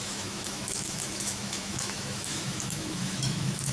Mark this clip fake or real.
fake